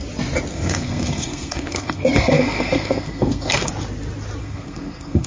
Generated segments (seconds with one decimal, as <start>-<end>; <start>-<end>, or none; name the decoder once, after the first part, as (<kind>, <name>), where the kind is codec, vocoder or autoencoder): 0.5-3.7 (codec, SNAC); 4.4-5.3